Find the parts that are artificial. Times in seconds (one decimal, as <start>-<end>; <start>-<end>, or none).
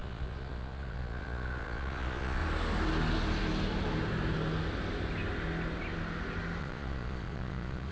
0.0-2.4; 6.6-7.9